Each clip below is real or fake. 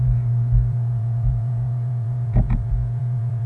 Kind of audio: fake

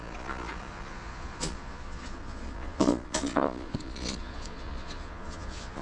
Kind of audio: fake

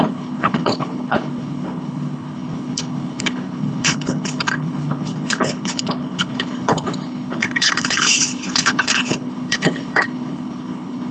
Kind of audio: fake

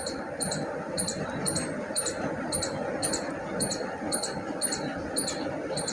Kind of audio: real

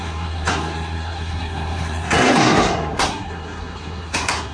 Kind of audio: fake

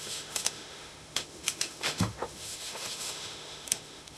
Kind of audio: fake